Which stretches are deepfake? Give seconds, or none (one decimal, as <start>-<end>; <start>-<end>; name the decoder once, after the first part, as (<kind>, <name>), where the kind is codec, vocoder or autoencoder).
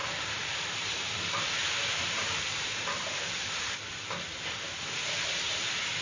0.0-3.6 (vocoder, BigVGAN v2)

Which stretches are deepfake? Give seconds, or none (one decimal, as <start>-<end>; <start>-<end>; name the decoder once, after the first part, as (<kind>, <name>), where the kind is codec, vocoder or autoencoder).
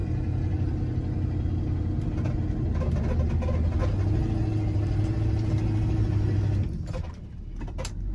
none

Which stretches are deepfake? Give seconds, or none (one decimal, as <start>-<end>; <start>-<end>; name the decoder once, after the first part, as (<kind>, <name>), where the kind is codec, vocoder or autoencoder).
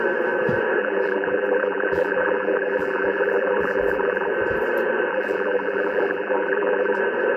0.8-4.3 (vocoder, BigVGAN v2); 5.1-7.0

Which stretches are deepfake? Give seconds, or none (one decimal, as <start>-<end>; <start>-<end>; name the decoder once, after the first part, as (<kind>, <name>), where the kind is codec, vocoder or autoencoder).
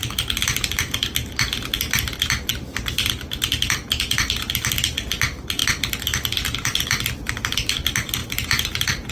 8.2-9.1 (vocoder, BigVGAN v2)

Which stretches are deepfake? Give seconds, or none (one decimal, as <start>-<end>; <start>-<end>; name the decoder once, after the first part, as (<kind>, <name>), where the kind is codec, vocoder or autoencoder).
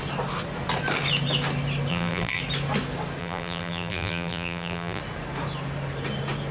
1.9-2.4 (vocoder, BigVGAN v2); 3.2-5.0